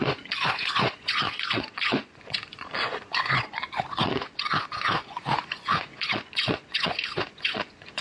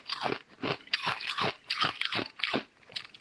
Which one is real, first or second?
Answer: second